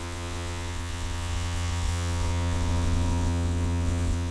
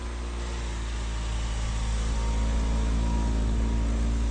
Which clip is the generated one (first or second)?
first